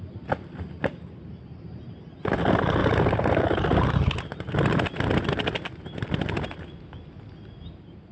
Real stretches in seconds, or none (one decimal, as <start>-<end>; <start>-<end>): 0.0-8.1